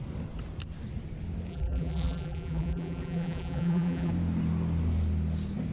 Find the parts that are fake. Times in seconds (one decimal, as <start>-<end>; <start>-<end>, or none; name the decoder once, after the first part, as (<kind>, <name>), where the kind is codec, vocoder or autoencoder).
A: 1.5-4.1 (vocoder, BigVGAN v2)